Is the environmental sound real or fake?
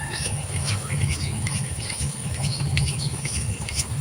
fake